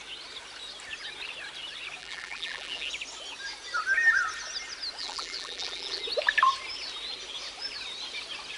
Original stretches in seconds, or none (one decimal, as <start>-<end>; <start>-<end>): 0.0-2.0; 2.9-5.0; 6.0-8.6